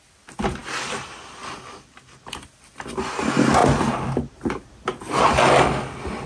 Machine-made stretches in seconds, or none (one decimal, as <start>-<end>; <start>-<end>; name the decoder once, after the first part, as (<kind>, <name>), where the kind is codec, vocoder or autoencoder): none